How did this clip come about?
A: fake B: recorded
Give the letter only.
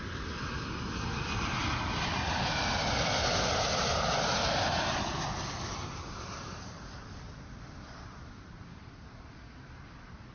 B